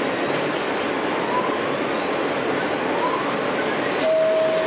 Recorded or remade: recorded